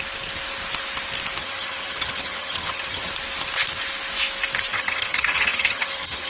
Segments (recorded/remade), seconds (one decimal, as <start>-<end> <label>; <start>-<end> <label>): 0.0-1.4 recorded; 1.4-3.1 remade; 3.1-4.7 recorded; 4.7-6.3 remade